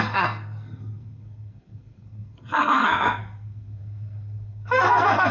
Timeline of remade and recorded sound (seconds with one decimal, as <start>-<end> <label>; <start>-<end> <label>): 0.0-5.3 remade